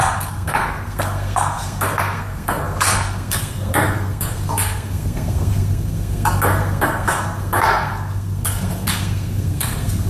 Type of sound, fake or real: fake